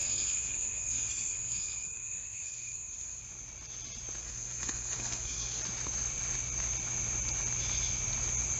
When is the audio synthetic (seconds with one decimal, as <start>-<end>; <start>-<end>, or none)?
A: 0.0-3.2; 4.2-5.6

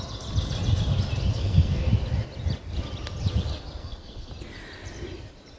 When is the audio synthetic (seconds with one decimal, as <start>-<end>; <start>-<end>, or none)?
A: 1.3-1.9; 3.8-4.3

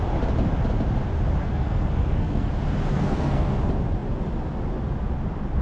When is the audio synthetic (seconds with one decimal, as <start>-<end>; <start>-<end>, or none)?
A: 1.4-2.5; 2.9-3.6

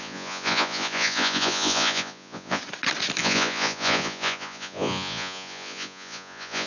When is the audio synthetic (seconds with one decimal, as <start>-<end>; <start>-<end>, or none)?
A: 0.0-2.6; 3.2-6.7